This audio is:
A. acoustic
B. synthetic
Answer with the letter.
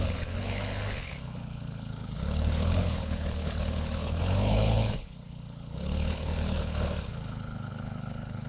B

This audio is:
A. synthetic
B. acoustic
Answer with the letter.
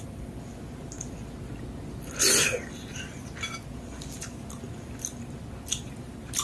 B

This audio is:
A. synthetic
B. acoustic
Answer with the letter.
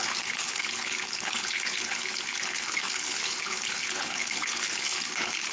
A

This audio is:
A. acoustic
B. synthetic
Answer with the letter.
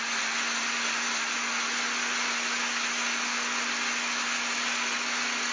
A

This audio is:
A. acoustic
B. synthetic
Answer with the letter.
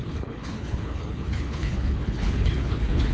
B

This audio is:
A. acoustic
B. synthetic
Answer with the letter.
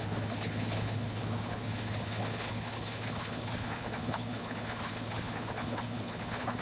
B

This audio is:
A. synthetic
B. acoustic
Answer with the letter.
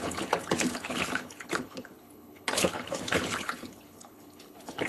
A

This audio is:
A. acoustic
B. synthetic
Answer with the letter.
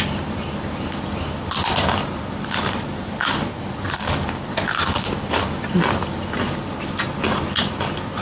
A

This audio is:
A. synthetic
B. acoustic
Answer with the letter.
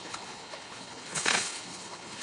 A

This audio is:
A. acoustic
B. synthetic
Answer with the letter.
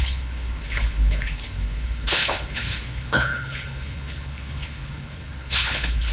B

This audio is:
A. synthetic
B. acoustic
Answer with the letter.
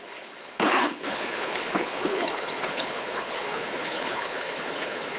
A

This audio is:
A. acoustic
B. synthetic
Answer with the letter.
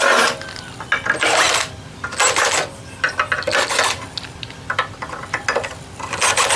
A